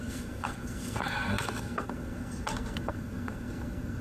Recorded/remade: remade